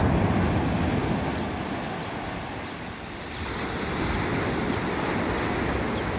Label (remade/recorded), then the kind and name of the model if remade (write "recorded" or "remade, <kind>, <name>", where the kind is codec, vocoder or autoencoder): recorded